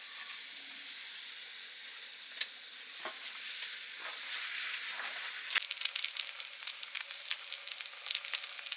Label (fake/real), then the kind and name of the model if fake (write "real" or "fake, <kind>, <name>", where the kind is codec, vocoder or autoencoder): real